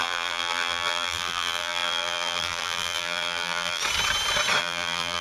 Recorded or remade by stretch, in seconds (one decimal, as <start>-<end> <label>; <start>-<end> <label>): 0.0-3.8 remade; 3.8-4.6 recorded; 4.6-5.2 remade